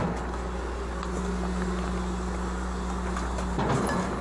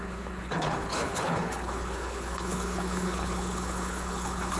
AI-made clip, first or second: second